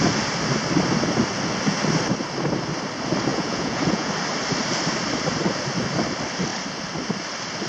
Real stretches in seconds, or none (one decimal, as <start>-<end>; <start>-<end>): 0.0-3.3; 4.1-7.7